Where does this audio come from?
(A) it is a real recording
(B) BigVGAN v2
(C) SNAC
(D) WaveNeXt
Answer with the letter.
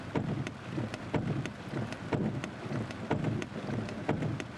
A